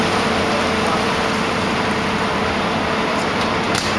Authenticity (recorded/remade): remade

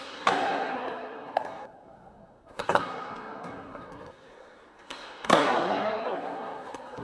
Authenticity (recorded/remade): remade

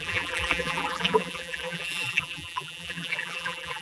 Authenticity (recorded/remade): remade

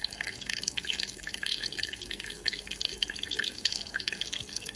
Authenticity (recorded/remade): remade